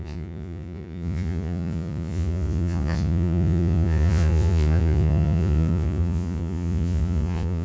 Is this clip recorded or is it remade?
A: remade